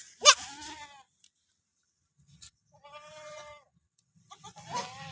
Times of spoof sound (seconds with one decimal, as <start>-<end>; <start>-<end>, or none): 1.7-5.1